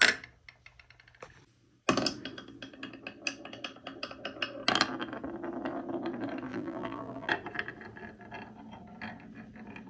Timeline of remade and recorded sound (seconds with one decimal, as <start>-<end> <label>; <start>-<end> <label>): 0.0-6.5 recorded; 6.5-7.3 remade; 7.3-9.9 recorded